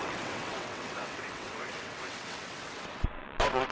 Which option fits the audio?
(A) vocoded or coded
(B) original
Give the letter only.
A